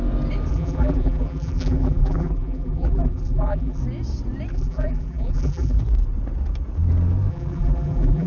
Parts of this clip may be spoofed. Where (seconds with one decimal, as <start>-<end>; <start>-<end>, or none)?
0.5-3.8; 4.5-5.8; 7.3-8.3